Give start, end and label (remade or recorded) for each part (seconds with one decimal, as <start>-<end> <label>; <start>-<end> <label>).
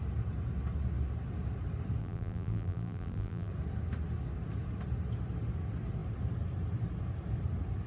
0.0-2.0 recorded; 2.0-3.5 remade; 3.5-7.9 recorded